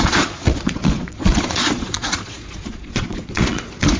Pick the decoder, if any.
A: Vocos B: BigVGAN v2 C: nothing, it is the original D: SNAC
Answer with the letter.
A